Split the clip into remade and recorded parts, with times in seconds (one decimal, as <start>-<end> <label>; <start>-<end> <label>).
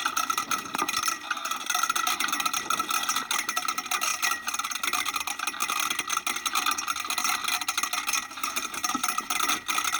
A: 0.0-1.1 remade; 1.1-10.0 recorded